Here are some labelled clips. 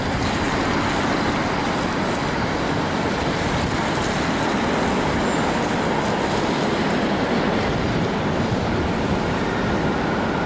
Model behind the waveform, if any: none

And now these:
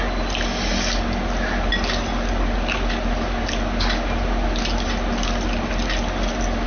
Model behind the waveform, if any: none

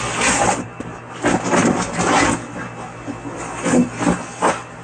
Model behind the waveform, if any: none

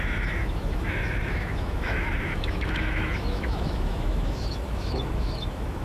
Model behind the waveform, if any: autoencoder, DAC-VAE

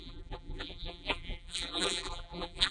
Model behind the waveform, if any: vocoder, BigVGAN v2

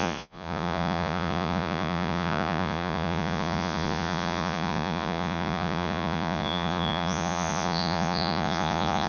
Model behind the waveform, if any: vocoder, Vocos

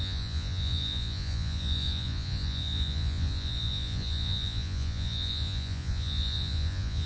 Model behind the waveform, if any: vocoder, Vocos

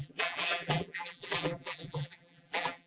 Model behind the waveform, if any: vocoder, BigVGAN v2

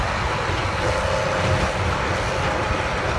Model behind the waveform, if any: none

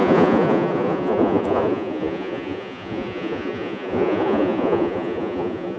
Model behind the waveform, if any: vocoder, Vocos